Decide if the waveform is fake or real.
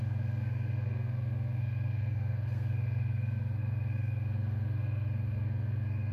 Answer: fake